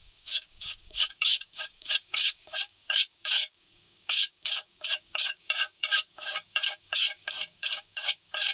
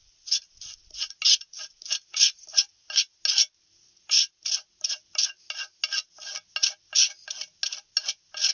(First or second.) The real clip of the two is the second